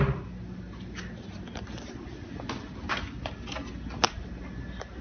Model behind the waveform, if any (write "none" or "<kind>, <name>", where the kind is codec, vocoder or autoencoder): none